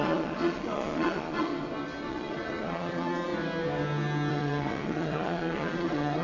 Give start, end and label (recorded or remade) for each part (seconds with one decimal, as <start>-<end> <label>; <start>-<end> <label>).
0.0-1.5 remade; 1.5-2.1 recorded; 2.1-3.3 remade; 3.3-4.3 recorded; 4.3-6.2 remade